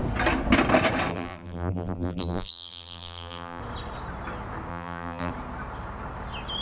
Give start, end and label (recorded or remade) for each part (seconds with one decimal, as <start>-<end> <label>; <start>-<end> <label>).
0.0-1.1 recorded; 1.1-3.6 remade; 3.6-4.7 recorded; 4.7-5.3 remade; 5.3-6.6 recorded